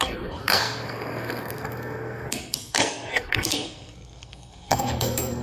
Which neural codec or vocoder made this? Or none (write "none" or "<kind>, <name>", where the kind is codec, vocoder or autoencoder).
codec, SNAC